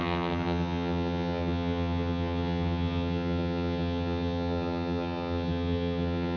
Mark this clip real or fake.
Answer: fake